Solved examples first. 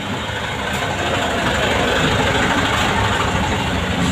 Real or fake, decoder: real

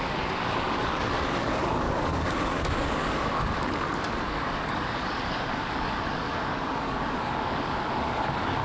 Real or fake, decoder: fake, codec, DAC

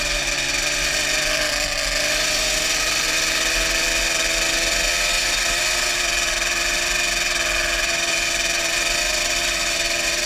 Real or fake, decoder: real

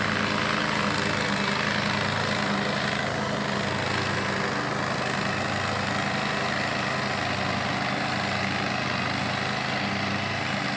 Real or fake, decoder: real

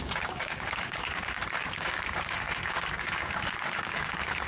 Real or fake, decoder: fake, codec, DAC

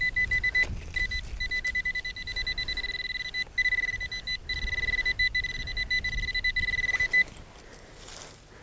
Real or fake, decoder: real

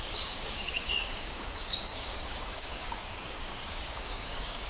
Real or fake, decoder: fake, codec, DAC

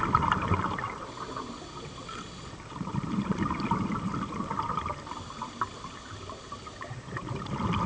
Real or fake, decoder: real